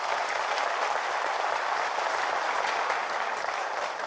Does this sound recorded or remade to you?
recorded